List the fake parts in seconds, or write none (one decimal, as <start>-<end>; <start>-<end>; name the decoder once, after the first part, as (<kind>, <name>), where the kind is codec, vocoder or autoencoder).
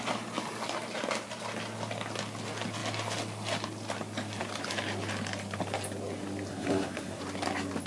6.5-7.2 (codec, SNAC)